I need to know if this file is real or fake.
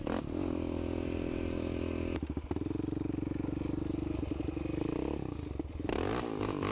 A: real